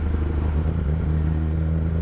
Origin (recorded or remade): recorded